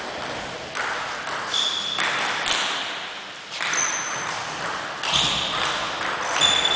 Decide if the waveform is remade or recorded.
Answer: recorded